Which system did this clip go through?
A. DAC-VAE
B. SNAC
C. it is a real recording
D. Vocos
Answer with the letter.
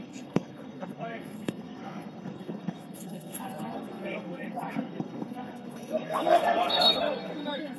B